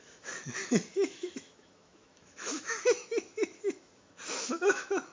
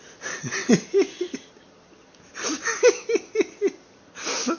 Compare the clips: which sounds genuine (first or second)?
second